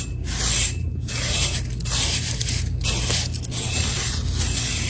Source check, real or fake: real